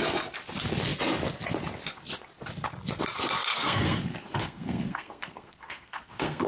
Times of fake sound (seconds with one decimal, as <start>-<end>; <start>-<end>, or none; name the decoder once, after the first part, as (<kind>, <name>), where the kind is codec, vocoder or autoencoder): 3.5-6.5 (codec, SNAC)

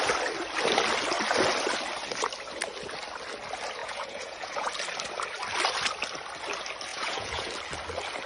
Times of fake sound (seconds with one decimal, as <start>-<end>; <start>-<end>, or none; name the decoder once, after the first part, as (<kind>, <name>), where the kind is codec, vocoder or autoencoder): 3.8-4.7 (vocoder, Vocos); 6.9-7.5

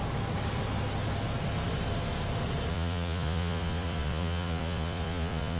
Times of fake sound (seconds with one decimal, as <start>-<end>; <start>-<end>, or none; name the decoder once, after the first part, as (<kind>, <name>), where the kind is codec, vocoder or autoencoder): 2.7-5.6 (vocoder, Vocos)